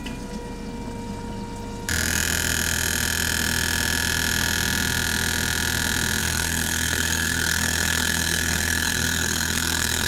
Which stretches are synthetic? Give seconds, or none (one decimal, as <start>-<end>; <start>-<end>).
6.2-10.1